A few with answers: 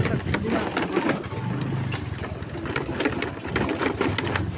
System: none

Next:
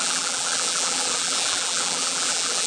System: vocoder, BigVGAN v2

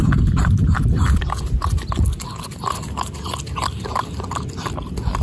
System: none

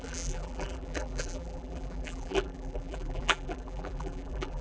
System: vocoder, BigVGAN v2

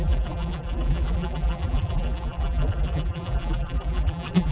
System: vocoder, BigVGAN v2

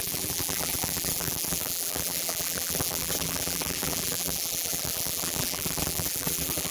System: vocoder, BigVGAN v2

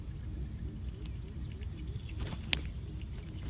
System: none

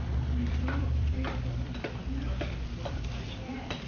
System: vocoder, BigVGAN v2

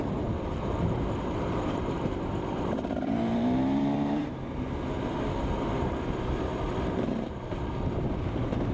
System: vocoder, BigVGAN v2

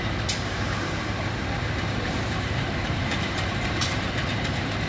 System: vocoder, BigVGAN v2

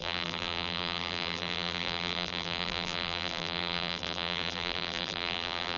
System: vocoder, BigVGAN v2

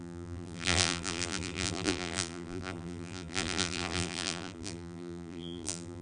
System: vocoder, BigVGAN v2